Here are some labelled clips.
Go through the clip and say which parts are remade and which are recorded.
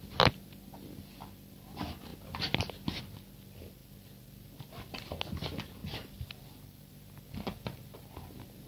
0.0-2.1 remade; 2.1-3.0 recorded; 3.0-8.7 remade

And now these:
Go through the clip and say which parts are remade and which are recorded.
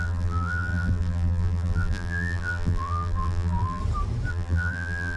0.0-3.8 remade; 3.8-4.3 recorded; 4.3-5.2 remade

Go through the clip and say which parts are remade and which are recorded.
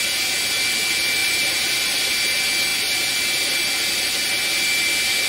0.0-1.2 recorded; 1.2-2.1 remade; 2.1-5.3 recorded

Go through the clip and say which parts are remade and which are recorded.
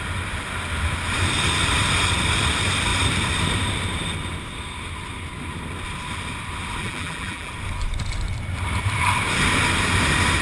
0.0-6.8 recorded; 6.8-7.5 remade; 7.5-10.4 recorded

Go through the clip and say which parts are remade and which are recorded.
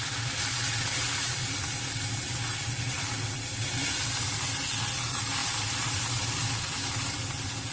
0.0-0.9 recorded; 0.9-2.0 remade; 2.0-5.4 recorded; 5.4-6.9 remade; 6.9-7.7 recorded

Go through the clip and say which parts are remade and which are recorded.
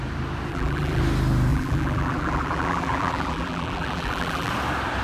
0.0-0.5 recorded; 0.5-1.0 remade; 1.0-1.5 recorded; 1.5-4.5 remade; 4.5-5.0 recorded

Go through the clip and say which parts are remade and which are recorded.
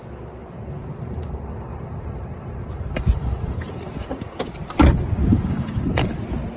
0.0-0.4 recorded; 0.4-4.4 remade; 4.4-5.3 recorded; 5.3-6.1 remade; 6.1-6.6 recorded